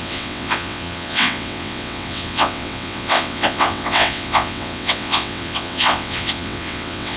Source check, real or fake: fake